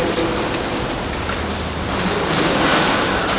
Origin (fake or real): real